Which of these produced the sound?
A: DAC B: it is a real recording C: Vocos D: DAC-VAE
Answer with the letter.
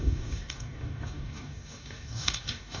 A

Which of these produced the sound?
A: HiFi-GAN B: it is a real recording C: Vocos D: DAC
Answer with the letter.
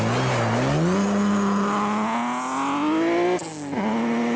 B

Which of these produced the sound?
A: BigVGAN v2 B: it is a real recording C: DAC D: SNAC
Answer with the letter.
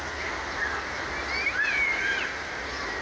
B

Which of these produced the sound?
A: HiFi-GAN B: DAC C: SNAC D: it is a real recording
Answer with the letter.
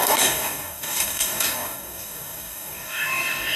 B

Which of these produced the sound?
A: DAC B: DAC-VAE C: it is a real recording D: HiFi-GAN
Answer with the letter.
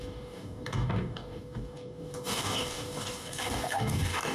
A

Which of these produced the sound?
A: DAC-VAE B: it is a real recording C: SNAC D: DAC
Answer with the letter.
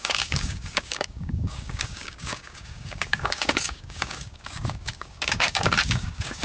D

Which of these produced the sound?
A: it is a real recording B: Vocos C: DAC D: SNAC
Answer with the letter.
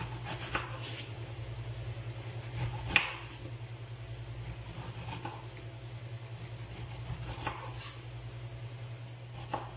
A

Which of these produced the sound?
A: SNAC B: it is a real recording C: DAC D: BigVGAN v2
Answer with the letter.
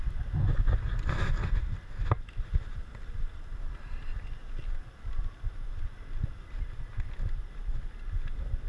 B